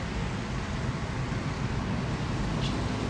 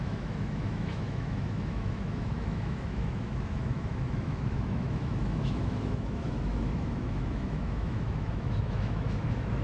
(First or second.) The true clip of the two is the first